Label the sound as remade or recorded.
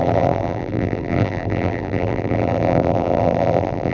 remade